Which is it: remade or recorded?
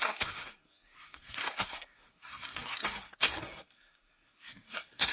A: remade